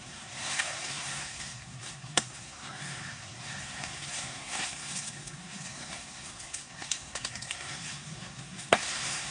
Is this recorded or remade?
remade